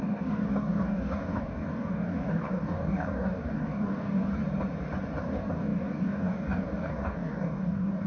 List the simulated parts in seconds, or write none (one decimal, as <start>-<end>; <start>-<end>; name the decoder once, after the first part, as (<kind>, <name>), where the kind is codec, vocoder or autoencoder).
0.0-4.4 (codec, DAC); 5.2-8.1

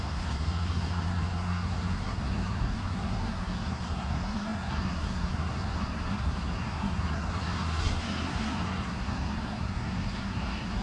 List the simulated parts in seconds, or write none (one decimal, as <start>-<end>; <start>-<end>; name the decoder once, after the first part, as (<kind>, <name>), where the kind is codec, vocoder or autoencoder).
0.0-10.8 (codec, SNAC)

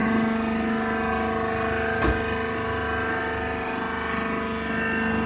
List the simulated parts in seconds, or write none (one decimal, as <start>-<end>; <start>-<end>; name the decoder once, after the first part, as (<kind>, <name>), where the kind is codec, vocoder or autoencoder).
none

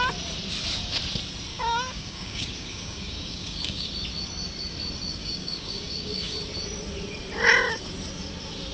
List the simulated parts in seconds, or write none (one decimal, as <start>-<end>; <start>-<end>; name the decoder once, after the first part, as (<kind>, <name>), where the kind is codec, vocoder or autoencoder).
1.5-3.9 (codec, DAC); 5.2-6.3

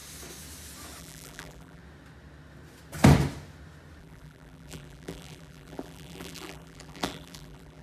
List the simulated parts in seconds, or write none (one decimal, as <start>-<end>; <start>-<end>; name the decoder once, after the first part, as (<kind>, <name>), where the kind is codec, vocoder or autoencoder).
1.0-1.8 (vocoder, BigVGAN v2); 4.0-7.8

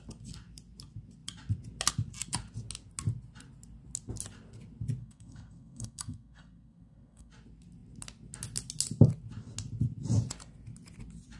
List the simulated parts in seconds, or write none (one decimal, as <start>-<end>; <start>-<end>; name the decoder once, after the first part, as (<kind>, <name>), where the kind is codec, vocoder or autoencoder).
5.0-7.3 (codec, SNAC)